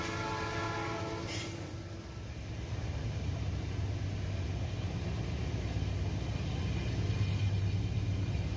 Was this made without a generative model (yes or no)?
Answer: yes